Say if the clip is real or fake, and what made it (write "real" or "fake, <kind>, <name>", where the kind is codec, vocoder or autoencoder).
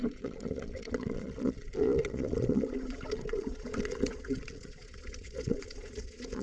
fake, vocoder, Vocos